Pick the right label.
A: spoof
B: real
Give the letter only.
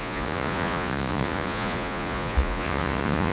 A